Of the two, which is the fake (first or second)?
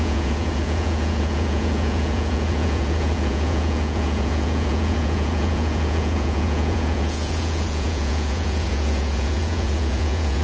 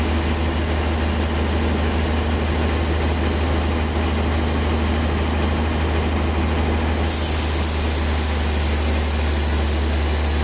first